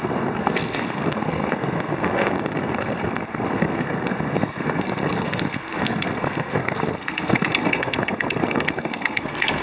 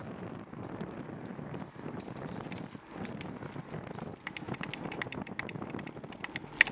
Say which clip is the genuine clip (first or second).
second